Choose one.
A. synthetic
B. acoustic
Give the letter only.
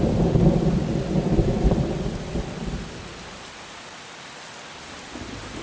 B